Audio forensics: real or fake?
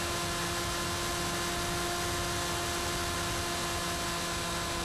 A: real